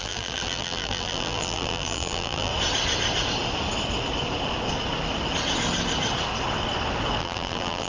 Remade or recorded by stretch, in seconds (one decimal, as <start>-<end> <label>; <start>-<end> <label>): 0.0-2.5 remade; 2.5-7.2 recorded; 7.2-7.9 remade